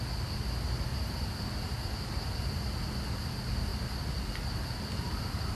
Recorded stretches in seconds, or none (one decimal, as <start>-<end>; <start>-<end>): 0.0-0.9; 1.9-5.6